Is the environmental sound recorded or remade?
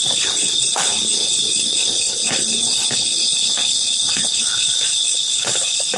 remade